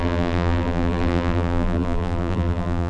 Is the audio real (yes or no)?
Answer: no